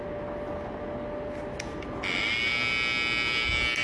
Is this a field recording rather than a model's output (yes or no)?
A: yes